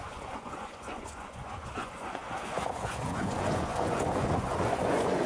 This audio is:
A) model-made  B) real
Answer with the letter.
A